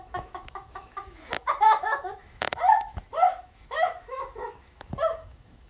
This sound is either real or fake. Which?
fake